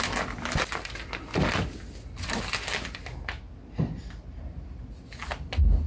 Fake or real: real